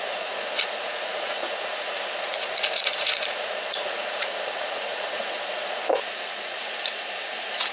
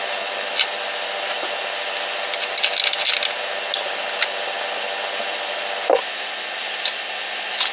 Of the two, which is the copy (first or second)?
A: first